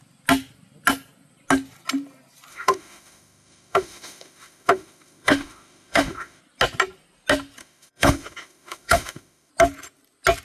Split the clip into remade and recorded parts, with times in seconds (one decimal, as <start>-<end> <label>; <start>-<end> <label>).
0.0-2.5 recorded; 2.5-6.4 remade; 6.4-7.6 recorded; 7.6-9.5 remade; 9.5-10.4 recorded